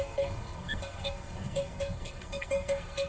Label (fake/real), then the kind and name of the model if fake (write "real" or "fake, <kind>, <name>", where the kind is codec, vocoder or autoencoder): fake, codec, SNAC